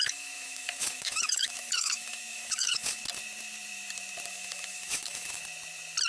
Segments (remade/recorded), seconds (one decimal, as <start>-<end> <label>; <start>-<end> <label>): 0.0-3.0 remade; 3.0-4.3 recorded; 4.3-5.4 remade; 5.4-6.1 recorded